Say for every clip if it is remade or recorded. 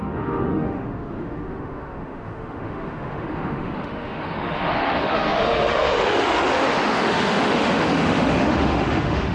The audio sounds remade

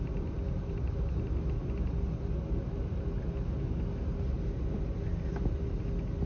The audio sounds recorded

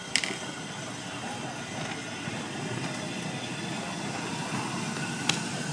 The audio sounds recorded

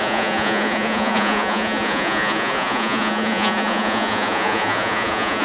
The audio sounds remade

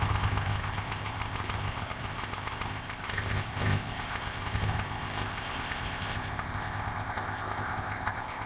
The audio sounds remade